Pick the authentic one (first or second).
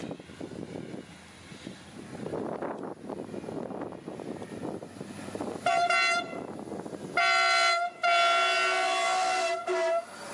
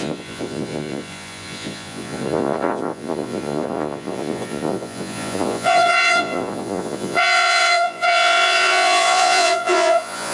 first